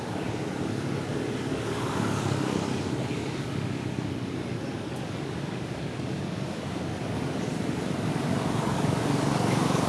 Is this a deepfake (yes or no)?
yes